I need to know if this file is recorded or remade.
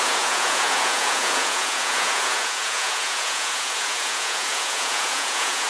remade